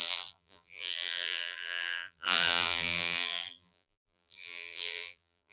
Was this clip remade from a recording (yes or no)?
yes